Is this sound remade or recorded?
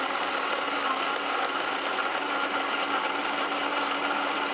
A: recorded